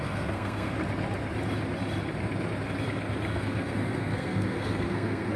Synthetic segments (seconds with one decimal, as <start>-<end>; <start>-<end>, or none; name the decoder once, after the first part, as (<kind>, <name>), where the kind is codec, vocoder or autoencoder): 0.0-0.8 (codec, SNAC); 3.3-5.4